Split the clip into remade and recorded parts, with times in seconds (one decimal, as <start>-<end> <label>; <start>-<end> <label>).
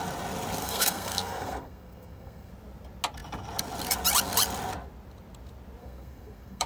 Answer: 0.0-0.6 recorded; 0.6-2.5 remade; 2.5-5.8 recorded; 5.8-6.7 remade